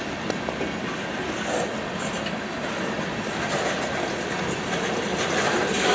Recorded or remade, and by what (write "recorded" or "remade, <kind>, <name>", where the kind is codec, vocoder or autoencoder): recorded